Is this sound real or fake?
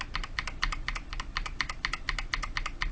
real